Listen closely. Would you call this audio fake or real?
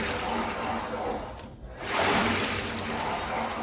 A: real